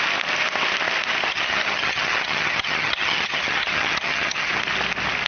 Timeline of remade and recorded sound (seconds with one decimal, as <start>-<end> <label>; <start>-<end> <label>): 0.0-1.3 recorded; 1.3-4.5 remade; 4.5-5.3 recorded